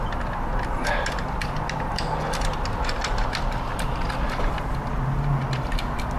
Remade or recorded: recorded